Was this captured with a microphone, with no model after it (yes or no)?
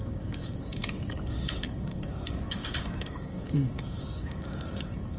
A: no